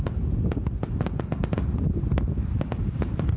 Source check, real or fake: real